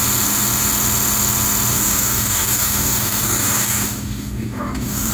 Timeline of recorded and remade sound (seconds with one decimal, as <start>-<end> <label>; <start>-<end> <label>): 0.0-1.7 recorded; 1.7-5.1 remade